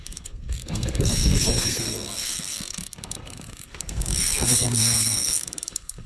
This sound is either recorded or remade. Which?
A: remade